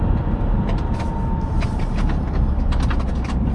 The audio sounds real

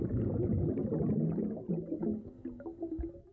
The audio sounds real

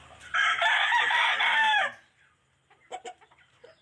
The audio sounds fake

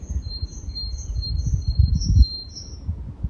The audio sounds real